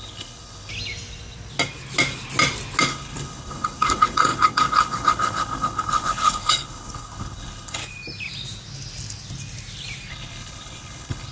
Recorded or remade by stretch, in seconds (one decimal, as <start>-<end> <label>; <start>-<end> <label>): 0.0-0.7 remade; 0.7-2.8 recorded; 2.8-7.8 remade; 7.8-10.1 recorded; 10.1-11.3 remade